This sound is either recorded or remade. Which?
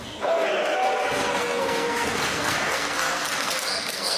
remade